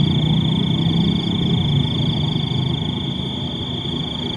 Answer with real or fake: real